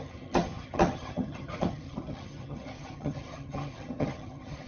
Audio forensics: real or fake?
fake